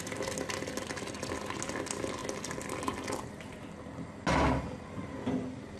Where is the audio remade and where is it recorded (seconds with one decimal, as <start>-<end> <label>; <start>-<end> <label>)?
0.0-5.8 recorded